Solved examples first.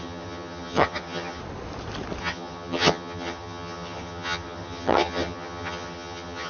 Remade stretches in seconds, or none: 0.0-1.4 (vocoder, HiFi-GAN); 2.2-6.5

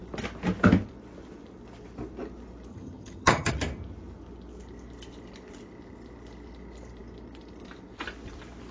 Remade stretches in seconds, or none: 2.7-3.5 (vocoder, HiFi-GAN)

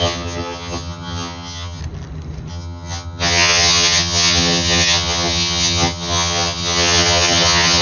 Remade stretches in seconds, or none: 0.0-1.8 (vocoder, HiFi-GAN); 2.5-7.8

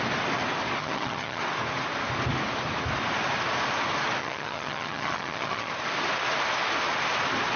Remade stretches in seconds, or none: 0.8-1.4 (vocoder, HiFi-GAN); 4.2-5.7